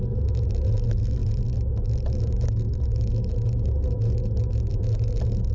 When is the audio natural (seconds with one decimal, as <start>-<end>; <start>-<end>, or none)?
0.0-5.5